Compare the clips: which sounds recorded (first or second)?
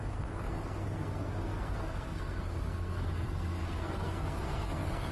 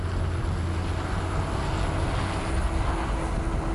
second